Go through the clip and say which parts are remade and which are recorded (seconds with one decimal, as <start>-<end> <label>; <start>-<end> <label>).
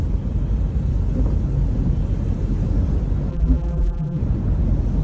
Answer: 0.0-3.3 recorded; 3.3-4.2 remade; 4.2-5.0 recorded